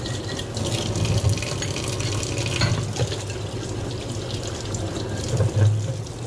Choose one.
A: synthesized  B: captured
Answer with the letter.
B